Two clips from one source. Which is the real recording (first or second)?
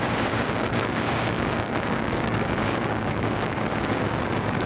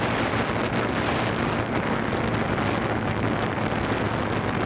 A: second